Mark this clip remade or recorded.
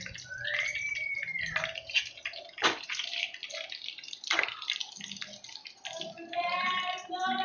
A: recorded